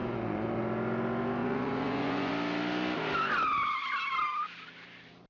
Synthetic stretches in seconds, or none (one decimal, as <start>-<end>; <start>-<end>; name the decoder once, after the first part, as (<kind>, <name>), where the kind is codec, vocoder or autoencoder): 0.0-0.6 (vocoder, Vocos); 1.4-2.3